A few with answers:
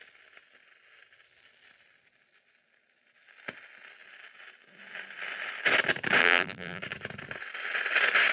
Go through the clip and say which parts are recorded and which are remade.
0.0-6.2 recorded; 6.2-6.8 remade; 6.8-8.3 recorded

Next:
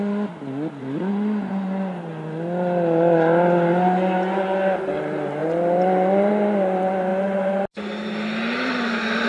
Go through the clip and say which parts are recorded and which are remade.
0.0-9.3 recorded

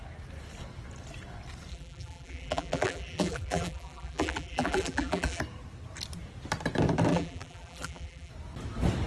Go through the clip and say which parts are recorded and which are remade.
0.0-1.7 recorded; 1.7-5.4 remade; 5.4-7.1 recorded; 7.1-8.3 remade; 8.3-9.1 recorded

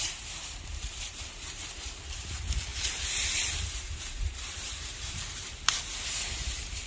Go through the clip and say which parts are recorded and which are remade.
0.0-6.9 remade

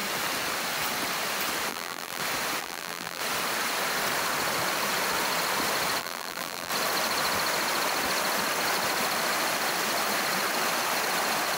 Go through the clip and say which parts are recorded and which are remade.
0.0-1.7 recorded; 1.7-2.2 remade; 2.2-2.6 recorded; 2.6-3.2 remade; 3.2-6.0 recorded; 6.0-6.7 remade; 6.7-11.6 recorded

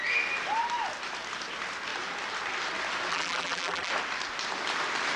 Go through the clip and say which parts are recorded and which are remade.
0.0-3.1 recorded; 3.1-3.9 remade; 3.9-5.2 recorded

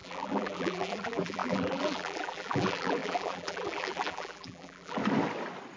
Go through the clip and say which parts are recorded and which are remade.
0.0-5.0 remade; 5.0-5.8 recorded

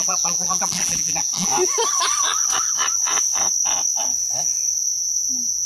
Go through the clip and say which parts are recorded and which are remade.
0.0-1.5 remade; 1.5-4.9 recorded; 4.9-5.7 remade